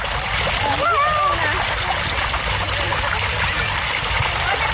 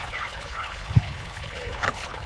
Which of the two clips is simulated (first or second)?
second